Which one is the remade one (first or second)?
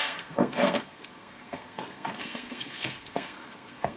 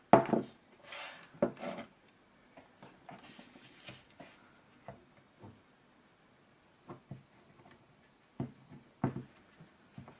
first